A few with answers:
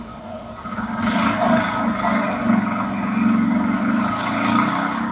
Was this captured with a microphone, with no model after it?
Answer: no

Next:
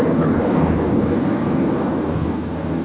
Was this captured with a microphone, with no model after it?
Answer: no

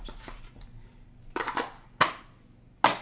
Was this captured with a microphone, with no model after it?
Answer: yes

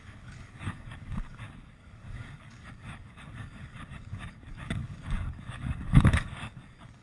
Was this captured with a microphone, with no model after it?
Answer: no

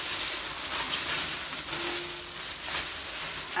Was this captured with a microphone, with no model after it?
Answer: yes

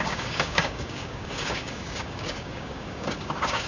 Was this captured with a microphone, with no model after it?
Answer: no